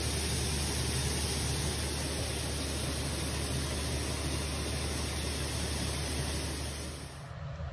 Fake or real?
real